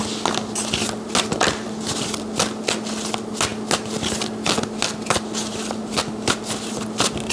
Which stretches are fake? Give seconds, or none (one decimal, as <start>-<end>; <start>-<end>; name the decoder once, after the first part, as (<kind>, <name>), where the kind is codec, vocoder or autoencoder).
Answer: none

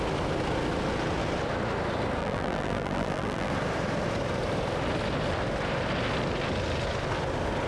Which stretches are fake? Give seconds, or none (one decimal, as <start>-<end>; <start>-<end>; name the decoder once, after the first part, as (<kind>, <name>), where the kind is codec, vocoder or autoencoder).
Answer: 2.2-3.5 (vocoder, BigVGAN v2)

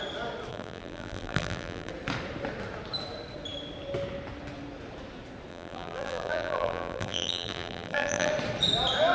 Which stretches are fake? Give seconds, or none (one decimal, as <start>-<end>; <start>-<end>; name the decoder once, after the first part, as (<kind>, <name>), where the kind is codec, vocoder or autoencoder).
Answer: 0.5-1.9 (vocoder, BigVGAN v2); 5.5-8.3